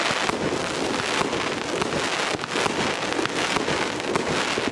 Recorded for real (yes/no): yes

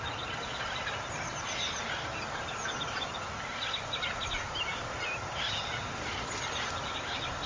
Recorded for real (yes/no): yes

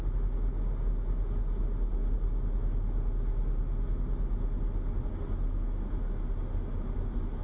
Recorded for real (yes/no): yes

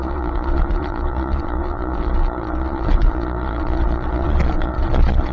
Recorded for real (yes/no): no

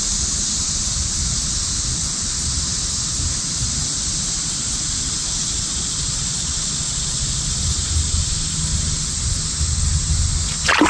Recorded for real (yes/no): yes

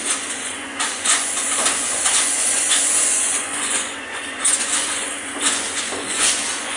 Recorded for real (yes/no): no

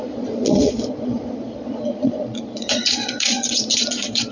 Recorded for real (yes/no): no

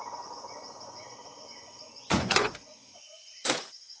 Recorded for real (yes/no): no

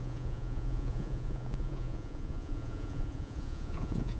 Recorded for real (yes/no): no